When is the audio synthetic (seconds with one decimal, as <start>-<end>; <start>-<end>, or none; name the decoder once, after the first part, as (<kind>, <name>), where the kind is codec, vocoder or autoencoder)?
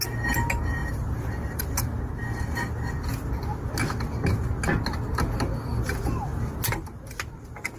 0.8-1.6 (vocoder, BigVGAN v2)